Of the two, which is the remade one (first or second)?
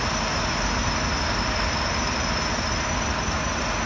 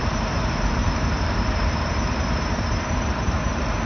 second